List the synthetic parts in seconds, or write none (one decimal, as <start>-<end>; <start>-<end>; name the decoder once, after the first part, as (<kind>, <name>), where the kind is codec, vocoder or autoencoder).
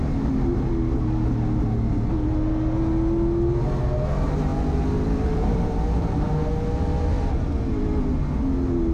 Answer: 0.0-0.7 (vocoder, BigVGAN v2); 4.5-5.7